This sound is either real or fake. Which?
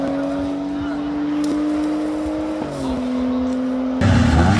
real